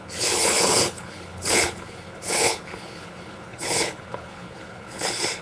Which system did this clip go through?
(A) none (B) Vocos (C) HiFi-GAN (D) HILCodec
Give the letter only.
D